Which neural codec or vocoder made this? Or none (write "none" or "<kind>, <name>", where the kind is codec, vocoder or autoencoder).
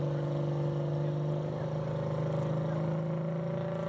none